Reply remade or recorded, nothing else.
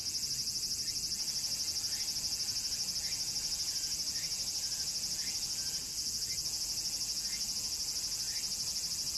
recorded